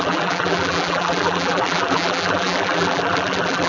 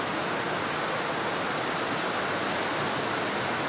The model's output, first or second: first